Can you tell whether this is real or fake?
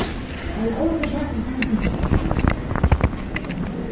real